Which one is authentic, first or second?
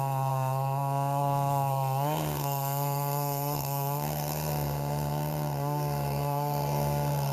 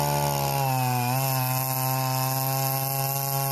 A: second